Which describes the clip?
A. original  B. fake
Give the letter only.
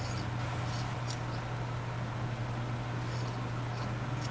A